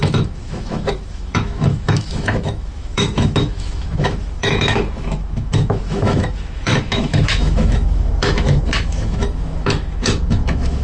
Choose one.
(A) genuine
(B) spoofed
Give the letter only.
B